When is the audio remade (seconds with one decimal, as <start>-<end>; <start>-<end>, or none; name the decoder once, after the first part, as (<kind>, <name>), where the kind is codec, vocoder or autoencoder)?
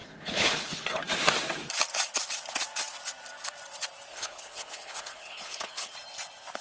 0.0-1.0 (codec, HILCodec); 4.1-5.9